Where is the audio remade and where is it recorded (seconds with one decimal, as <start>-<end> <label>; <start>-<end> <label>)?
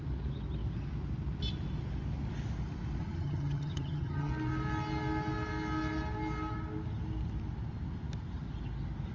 0.0-3.0 recorded; 3.0-4.3 remade; 4.3-9.1 recorded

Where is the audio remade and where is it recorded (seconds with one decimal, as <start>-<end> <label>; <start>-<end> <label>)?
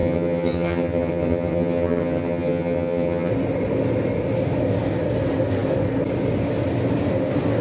0.0-3.3 remade; 3.3-7.6 recorded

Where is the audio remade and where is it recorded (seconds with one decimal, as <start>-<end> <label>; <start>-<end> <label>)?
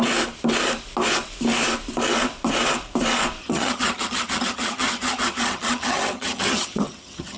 0.0-3.4 recorded; 3.4-7.4 remade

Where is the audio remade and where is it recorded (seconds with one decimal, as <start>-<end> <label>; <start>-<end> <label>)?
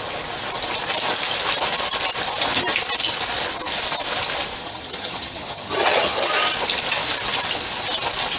0.0-4.6 recorded; 4.6-6.3 remade; 6.3-8.4 recorded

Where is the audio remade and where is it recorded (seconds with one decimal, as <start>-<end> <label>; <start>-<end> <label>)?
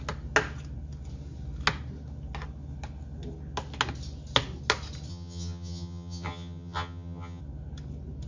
0.0-5.1 recorded; 5.1-7.4 remade; 7.4-8.3 recorded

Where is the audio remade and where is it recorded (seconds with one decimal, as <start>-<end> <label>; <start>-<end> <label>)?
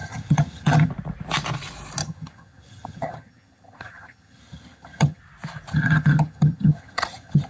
0.0-0.9 remade; 0.9-2.0 recorded; 2.0-5.2 remade; 5.2-5.7 recorded; 5.7-7.5 remade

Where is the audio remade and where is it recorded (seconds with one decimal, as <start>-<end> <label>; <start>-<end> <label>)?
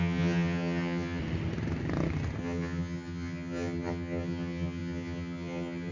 0.0-1.2 remade; 1.2-2.4 recorded; 2.4-5.9 remade